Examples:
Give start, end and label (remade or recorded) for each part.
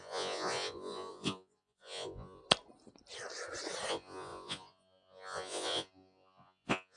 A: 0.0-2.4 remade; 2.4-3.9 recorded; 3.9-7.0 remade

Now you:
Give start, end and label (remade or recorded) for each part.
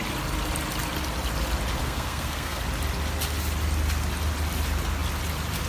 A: 0.0-1.8 recorded; 1.8-2.6 remade; 2.6-5.7 recorded